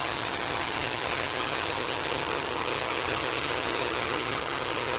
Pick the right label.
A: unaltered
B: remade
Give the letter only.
B